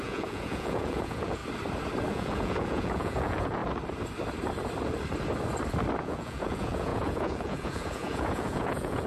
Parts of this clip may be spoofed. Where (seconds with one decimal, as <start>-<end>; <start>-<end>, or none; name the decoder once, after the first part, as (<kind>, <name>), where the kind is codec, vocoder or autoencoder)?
0.0-1.4 (vocoder, Vocos); 2.1-3.6; 6.0-9.1